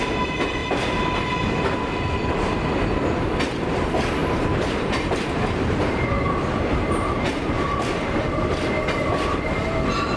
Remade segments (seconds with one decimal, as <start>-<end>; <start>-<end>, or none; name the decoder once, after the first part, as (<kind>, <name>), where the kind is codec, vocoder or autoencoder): 4.2-6.1 (vocoder, BigVGAN v2); 6.7-7.8